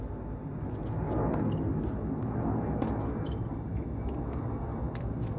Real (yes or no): yes